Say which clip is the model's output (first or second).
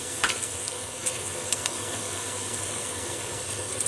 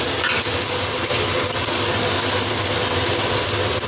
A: first